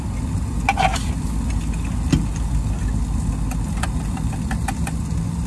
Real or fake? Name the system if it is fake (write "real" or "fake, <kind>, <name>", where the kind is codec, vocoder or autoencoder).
real